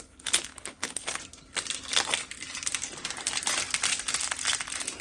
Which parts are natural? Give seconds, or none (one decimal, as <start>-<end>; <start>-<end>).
0.0-0.5; 1.2-5.0